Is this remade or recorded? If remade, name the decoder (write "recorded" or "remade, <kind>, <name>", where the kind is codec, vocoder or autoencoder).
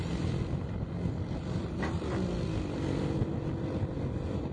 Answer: recorded